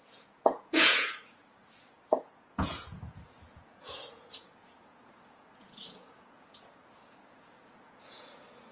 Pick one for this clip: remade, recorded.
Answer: remade